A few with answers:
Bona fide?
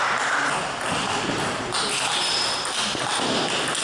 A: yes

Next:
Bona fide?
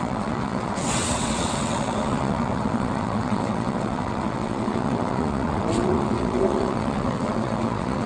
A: no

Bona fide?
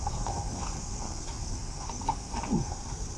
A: no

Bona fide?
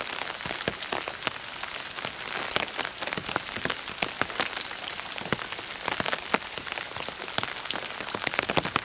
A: yes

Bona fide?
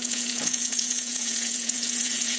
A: no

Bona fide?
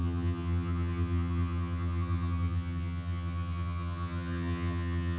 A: no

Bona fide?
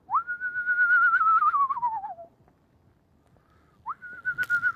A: yes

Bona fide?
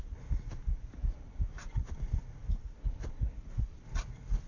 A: yes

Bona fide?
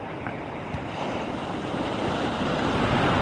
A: yes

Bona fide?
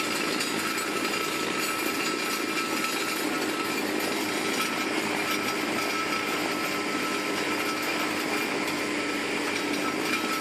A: yes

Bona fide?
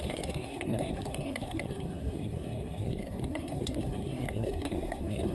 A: no